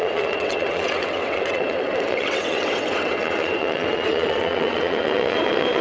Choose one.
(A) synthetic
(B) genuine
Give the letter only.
A